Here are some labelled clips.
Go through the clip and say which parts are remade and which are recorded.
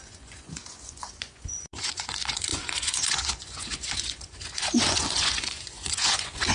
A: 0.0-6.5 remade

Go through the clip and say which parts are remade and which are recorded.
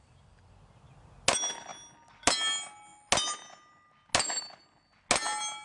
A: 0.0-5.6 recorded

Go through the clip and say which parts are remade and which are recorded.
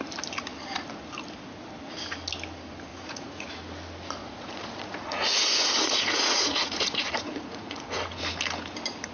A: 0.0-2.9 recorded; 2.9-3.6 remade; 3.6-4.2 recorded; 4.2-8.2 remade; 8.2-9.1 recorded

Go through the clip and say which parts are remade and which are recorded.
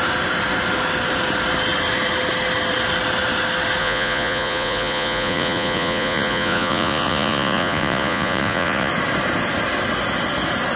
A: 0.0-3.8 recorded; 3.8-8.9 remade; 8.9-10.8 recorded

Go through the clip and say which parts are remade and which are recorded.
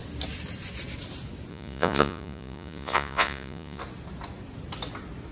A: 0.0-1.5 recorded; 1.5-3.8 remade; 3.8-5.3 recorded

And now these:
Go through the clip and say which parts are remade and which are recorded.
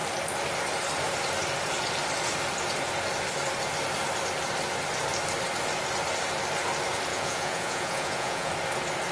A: 0.0-7.1 recorded; 7.1-8.5 remade; 8.5-9.1 recorded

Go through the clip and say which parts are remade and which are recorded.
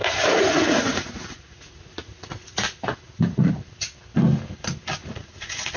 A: 0.0-3.5 remade; 3.5-5.0 recorded; 5.0-5.8 remade